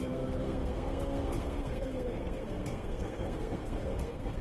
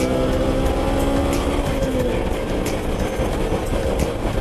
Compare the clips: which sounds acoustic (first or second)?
second